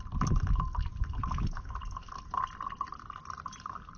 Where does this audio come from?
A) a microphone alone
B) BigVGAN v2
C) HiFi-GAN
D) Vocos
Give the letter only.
A